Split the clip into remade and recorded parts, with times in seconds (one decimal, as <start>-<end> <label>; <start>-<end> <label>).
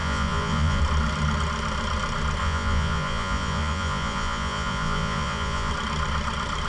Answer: 0.0-0.8 remade; 0.8-2.4 recorded; 2.4-5.7 remade; 5.7-6.7 recorded